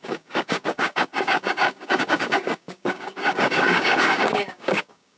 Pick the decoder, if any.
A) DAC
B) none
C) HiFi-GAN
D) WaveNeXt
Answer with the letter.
A